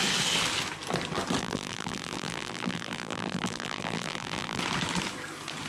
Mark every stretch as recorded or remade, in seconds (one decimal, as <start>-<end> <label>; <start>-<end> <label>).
0.0-1.4 recorded; 1.4-4.6 remade; 4.6-5.7 recorded

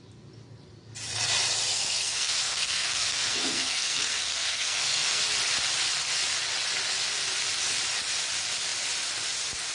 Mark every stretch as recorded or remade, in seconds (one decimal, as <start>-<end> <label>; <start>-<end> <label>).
0.0-1.7 recorded; 1.7-5.2 remade; 5.2-9.7 recorded

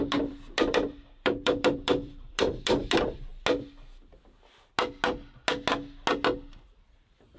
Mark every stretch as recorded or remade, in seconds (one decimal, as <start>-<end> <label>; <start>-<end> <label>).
0.0-3.3 remade; 3.3-7.4 recorded